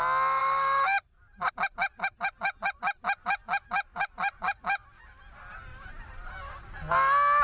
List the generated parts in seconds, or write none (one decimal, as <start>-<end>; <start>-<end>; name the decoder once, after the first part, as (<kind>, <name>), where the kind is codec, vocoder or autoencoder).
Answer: 0.4-1.5 (vocoder, BigVGAN v2); 3.9-4.6; 5.7-6.6